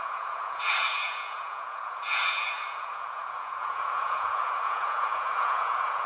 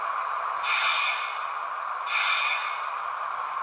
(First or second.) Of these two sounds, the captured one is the second